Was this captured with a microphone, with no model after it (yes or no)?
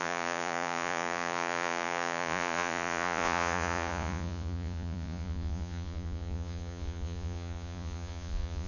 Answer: no